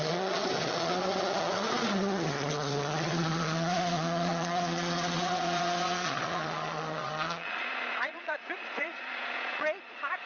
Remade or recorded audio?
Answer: remade